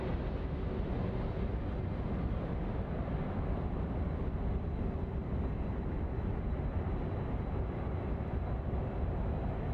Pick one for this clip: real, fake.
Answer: real